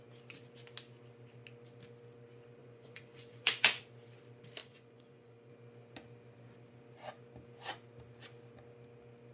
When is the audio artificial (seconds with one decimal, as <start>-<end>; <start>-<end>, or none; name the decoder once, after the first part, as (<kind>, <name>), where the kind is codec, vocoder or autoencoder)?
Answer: 2.6-3.8 (vocoder, Vocos); 4.6-5.5